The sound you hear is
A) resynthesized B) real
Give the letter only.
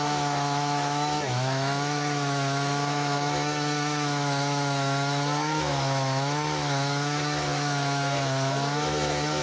A